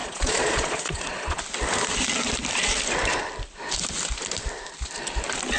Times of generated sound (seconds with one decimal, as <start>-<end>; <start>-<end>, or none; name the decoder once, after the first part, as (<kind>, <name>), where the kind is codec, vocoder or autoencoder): 0.0-1.4 (vocoder, Vocos)